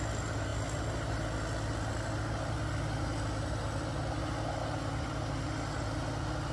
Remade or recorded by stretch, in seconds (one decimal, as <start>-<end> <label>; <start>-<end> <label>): 0.0-6.5 recorded